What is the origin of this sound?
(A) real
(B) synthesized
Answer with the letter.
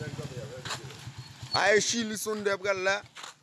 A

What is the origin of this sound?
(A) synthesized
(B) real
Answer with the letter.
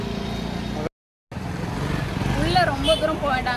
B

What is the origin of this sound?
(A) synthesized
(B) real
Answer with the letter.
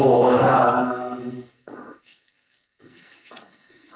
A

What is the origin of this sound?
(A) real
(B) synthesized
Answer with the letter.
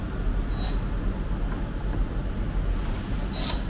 A